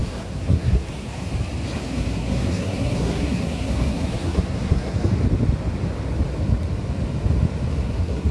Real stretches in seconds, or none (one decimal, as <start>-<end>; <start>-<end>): 1.3-1.9; 5.1-7.7